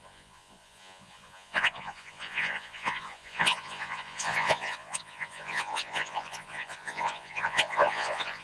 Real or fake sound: fake